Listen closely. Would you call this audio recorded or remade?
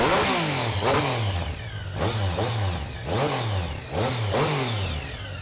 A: recorded